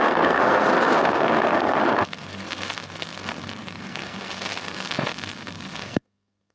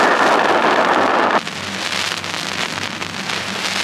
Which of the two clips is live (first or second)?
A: second